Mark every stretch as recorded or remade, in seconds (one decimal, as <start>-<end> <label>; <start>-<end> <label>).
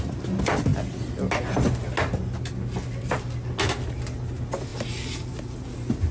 0.0-6.1 recorded